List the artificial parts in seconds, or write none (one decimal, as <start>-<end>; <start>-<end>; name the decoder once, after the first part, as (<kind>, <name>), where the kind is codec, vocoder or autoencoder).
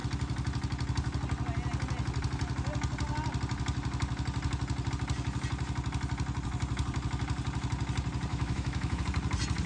8.3-9.0 (autoencoder, DAC-VAE)